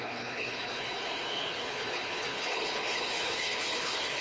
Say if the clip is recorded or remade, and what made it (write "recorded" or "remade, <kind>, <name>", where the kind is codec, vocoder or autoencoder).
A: remade, codec, HILCodec